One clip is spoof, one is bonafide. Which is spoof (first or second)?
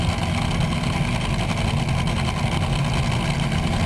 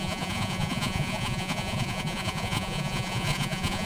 second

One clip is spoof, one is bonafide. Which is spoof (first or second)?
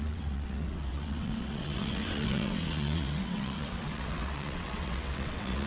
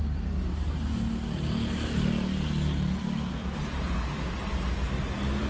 first